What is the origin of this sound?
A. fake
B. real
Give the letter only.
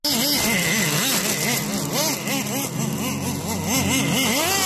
B